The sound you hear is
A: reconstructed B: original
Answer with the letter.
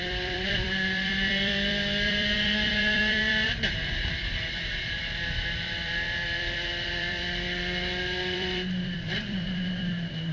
A